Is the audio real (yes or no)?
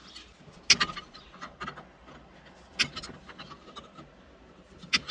yes